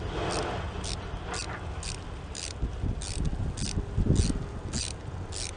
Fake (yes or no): no